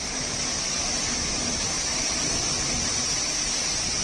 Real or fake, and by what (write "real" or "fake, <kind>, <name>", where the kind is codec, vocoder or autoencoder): real